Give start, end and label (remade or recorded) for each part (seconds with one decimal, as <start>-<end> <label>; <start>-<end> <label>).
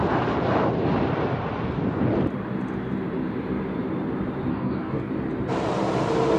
0.0-4.5 recorded; 4.5-5.1 remade; 5.1-6.4 recorded